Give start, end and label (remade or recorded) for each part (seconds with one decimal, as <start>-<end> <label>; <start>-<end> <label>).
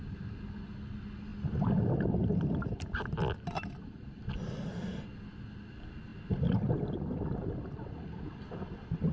0.0-9.1 recorded